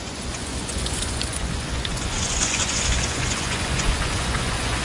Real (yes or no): no